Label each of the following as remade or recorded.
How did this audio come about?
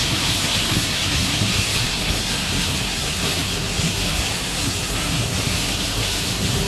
remade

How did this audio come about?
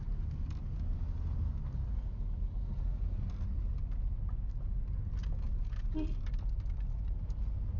recorded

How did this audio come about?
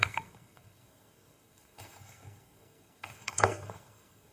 remade